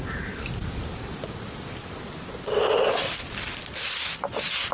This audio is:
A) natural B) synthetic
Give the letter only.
A